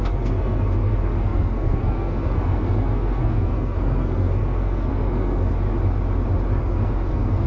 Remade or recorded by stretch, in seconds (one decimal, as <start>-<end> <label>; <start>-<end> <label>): 0.0-5.5 remade; 5.5-6.6 recorded; 6.6-7.5 remade